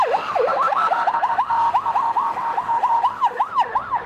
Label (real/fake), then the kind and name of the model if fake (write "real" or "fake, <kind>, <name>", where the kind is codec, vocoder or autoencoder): fake, autoencoder, DAC-VAE